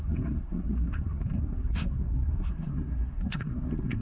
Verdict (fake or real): fake